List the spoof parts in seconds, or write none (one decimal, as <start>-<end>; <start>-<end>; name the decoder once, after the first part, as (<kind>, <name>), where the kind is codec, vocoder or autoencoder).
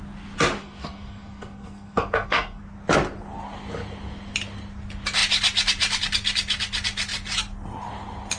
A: 0.6-2.6 (codec, SNAC)